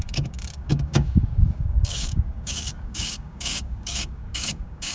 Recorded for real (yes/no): no